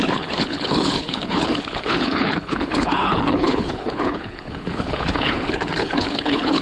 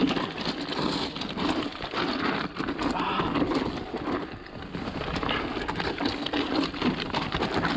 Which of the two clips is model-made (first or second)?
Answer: first